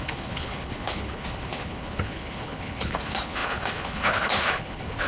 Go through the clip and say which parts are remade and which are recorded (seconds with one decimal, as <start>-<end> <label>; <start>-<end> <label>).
0.0-5.1 remade